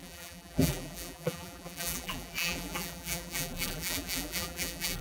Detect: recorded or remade remade